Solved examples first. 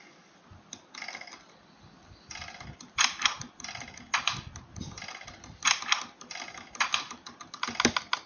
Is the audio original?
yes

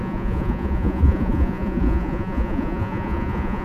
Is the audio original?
no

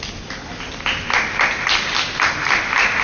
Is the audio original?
yes